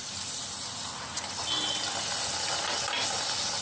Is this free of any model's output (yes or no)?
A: yes